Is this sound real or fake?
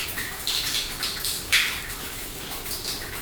fake